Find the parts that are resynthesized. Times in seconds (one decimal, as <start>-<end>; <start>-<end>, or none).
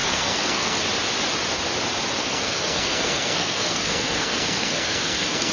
0.0-0.8; 2.2-5.5